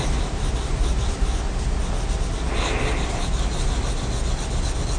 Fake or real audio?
real